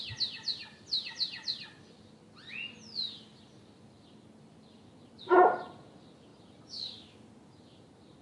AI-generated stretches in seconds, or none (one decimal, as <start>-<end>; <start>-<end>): none